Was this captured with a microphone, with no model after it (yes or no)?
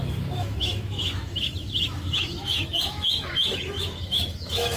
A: no